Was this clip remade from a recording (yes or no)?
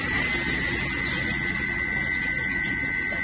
no